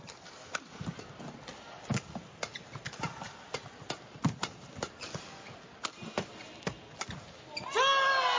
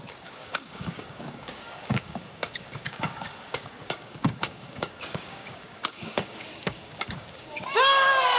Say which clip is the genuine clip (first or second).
first